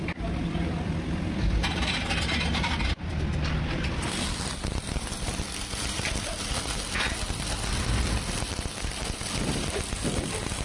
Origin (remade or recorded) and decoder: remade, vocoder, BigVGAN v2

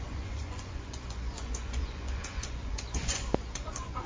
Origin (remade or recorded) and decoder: remade, vocoder, Vocos